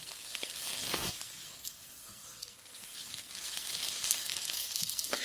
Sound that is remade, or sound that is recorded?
remade